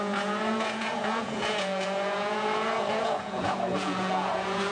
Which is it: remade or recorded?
remade